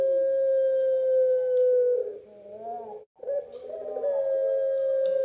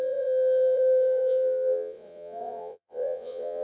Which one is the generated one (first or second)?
second